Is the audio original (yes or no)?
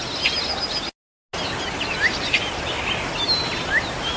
yes